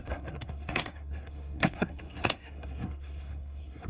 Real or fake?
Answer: fake